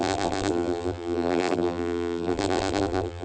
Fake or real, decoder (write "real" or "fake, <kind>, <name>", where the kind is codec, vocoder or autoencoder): fake, vocoder, BigVGAN v2